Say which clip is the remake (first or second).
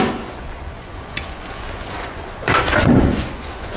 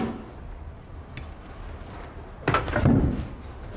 first